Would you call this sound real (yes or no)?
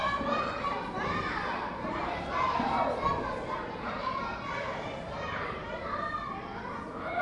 no